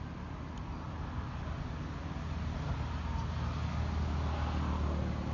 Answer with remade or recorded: recorded